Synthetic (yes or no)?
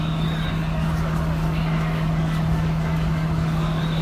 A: yes